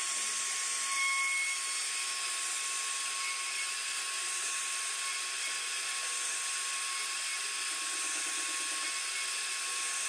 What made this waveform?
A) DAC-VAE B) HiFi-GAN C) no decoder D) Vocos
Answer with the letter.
C